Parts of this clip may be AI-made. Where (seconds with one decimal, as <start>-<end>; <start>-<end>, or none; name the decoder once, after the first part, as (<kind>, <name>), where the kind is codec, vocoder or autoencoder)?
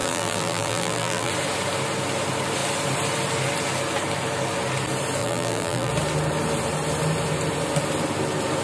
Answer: 0.0-1.3 (vocoder, BigVGAN v2); 5.2-5.9